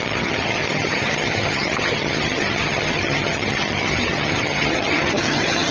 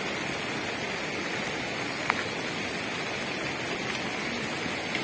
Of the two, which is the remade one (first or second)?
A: first